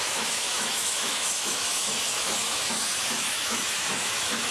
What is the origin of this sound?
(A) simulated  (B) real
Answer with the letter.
A